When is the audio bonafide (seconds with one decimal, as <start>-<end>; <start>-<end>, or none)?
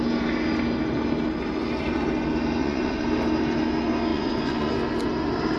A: 0.0-2.6; 3.1-4.1; 4.7-5.6